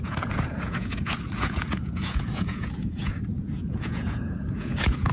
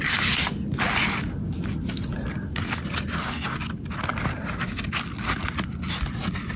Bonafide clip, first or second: second